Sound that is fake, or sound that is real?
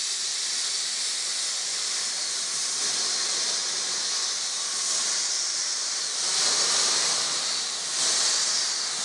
real